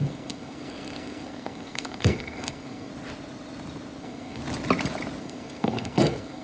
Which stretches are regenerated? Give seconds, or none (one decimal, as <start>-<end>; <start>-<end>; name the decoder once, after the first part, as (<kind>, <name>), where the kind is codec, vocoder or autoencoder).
0.0-2.9 (codec, SNAC); 4.0-4.4; 5.2-6.4